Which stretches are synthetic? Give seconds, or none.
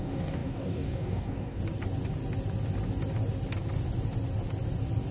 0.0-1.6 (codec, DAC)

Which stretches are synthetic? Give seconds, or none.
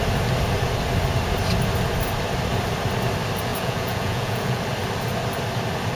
3.5-4.6 (vocoder, Vocos)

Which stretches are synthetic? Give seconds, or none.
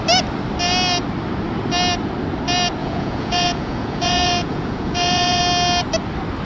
2.8-5.4 (vocoder, Vocos)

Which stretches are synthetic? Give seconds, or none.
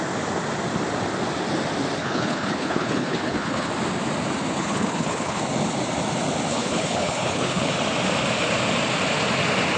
2.0-3.7 (codec, HILCodec); 4.6-5.4; 6.5-7.7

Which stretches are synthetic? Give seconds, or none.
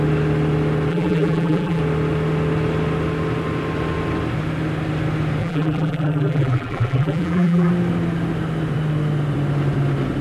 0.9-1.8 (vocoder, BigVGAN v2); 5.4-7.7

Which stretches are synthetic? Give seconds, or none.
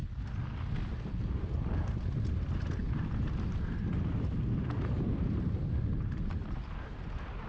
none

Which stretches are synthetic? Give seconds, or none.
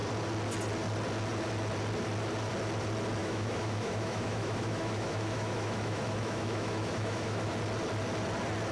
3.2-7.5 (autoencoder, DAC-VAE)